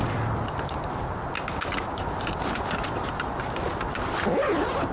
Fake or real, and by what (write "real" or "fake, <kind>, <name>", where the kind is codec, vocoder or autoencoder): real